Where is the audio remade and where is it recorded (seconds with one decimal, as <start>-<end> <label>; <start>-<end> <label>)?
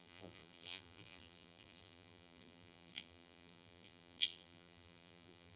0.0-5.6 remade